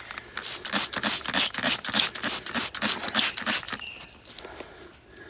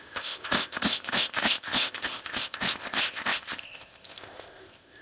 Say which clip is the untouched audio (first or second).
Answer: first